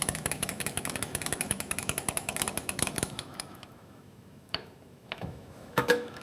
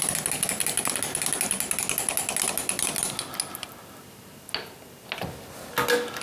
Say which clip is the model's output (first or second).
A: first